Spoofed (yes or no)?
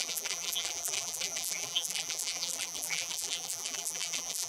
yes